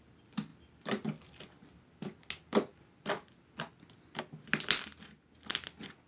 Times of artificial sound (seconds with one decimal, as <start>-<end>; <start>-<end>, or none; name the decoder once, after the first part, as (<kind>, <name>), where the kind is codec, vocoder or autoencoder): none